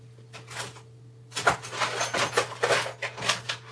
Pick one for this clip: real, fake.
real